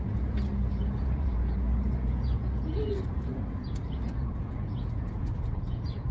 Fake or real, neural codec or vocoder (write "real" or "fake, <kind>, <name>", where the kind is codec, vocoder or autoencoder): fake, vocoder, Vocos